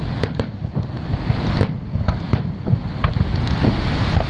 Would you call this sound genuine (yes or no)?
yes